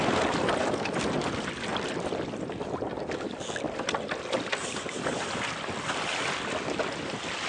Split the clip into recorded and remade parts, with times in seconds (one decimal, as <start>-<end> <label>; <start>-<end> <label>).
0.0-1.7 recorded; 1.7-6.2 remade; 6.2-7.5 recorded